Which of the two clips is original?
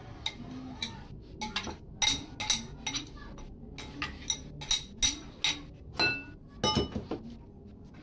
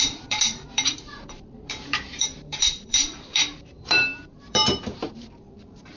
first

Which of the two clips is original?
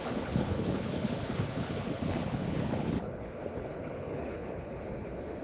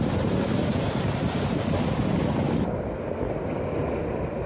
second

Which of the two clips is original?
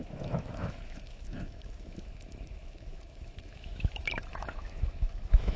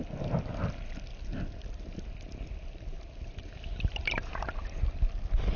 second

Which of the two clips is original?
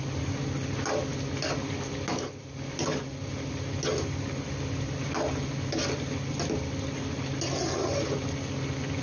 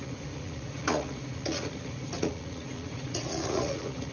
first